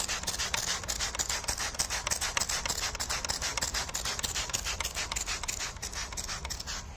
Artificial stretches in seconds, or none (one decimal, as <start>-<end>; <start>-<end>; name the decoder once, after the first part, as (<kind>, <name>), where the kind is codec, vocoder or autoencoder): none